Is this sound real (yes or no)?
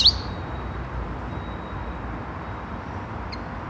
yes